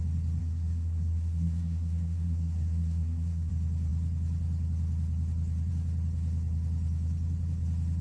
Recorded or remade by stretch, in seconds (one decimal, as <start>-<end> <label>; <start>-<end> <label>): 0.0-0.4 recorded; 0.4-3.5 remade; 3.5-8.0 recorded